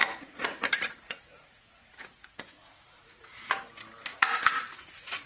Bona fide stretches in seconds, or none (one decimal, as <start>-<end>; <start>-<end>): 3.2-4.1